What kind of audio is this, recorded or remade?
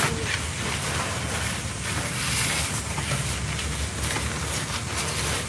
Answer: recorded